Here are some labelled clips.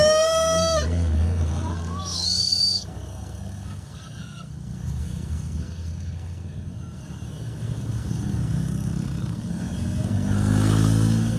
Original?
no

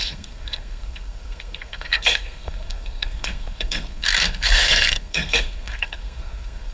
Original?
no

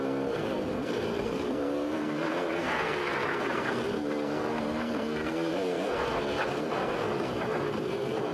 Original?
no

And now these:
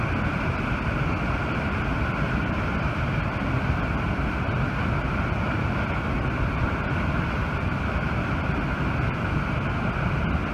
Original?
yes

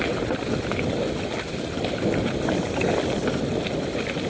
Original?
yes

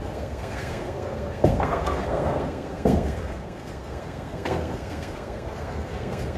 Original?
no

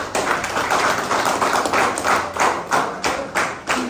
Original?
yes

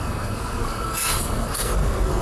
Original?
no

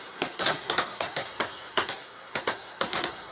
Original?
no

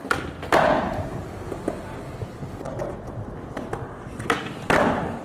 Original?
yes